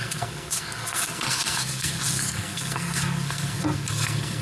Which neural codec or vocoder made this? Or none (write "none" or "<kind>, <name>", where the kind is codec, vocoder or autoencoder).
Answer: codec, SNAC